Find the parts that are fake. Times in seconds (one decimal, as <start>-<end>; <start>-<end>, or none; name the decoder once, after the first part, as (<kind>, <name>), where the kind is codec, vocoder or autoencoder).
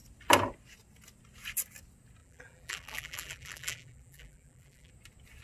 2.2-4.9 (vocoder, BigVGAN v2)